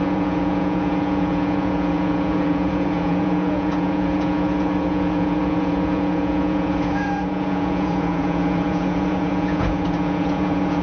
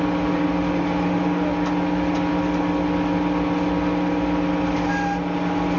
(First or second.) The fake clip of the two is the first